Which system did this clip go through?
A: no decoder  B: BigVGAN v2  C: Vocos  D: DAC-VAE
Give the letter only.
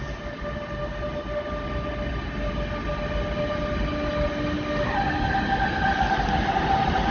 A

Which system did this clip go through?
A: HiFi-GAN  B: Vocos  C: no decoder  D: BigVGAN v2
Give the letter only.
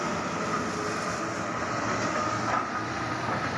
C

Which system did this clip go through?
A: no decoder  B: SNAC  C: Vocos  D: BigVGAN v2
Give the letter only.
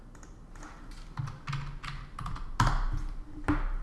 A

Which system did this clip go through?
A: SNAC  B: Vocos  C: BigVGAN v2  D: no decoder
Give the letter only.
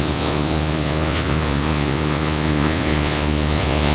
B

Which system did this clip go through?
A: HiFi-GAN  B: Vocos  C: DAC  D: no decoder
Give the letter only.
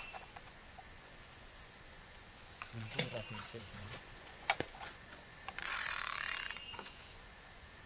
B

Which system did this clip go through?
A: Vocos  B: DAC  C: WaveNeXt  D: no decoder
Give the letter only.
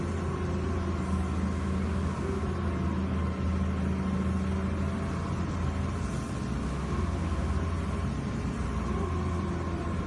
D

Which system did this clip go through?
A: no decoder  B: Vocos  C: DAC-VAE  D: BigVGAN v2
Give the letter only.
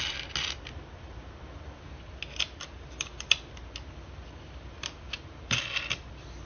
A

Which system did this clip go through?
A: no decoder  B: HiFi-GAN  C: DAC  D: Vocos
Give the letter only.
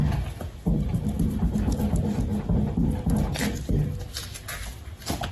A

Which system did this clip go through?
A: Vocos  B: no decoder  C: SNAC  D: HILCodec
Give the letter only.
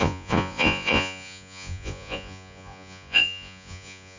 A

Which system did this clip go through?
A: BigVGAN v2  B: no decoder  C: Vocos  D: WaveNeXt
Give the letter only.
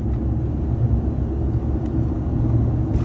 B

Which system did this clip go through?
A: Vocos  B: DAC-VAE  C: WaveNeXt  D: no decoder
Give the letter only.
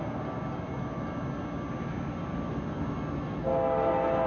D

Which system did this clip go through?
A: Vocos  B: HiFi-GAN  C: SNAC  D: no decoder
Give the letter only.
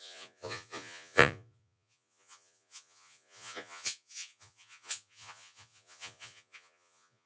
A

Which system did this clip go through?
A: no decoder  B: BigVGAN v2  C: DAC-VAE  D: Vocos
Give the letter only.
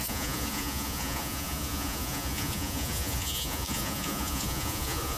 D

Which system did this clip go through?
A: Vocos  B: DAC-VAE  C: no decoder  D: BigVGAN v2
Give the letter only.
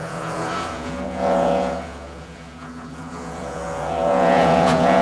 A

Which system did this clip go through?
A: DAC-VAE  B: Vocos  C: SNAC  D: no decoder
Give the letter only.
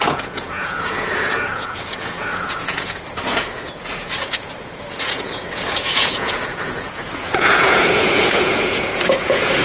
B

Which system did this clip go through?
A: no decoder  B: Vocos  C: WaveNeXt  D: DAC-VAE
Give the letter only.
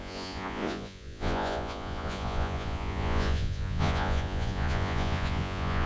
B